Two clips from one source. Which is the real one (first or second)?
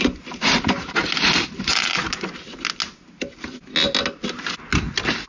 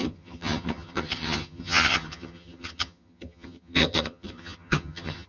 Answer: first